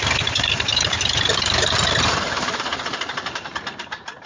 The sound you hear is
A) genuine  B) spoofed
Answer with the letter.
B